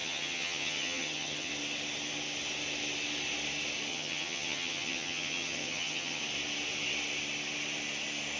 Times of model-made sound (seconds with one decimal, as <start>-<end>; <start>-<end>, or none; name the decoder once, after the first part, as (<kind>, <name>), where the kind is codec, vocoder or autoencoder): 0.0-1.5 (vocoder, HiFi-GAN); 3.9-6.2